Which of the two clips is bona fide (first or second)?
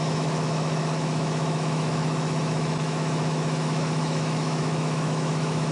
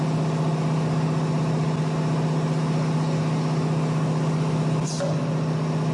second